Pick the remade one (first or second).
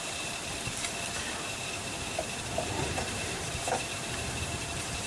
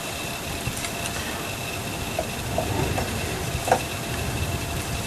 first